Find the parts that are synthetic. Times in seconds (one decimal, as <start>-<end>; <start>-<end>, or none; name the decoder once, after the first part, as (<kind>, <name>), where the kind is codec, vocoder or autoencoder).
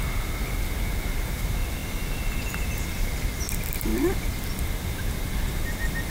0.0-1.8 (vocoder, BigVGAN v2); 3.3-6.1